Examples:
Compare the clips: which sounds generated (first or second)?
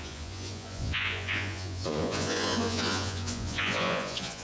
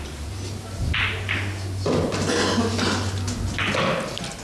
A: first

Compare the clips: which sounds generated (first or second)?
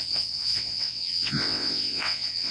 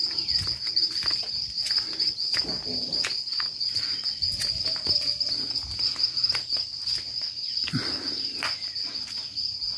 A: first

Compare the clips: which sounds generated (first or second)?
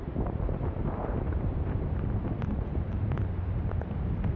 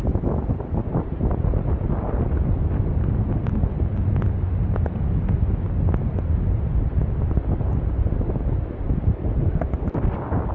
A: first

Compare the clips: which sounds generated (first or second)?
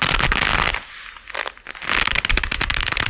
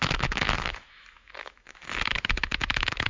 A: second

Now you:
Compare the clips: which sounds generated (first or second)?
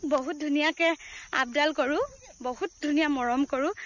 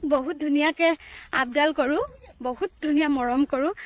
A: second